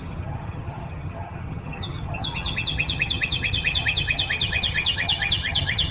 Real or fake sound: fake